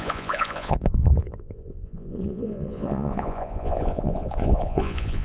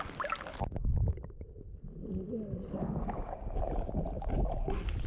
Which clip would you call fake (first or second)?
first